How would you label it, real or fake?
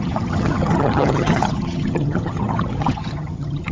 fake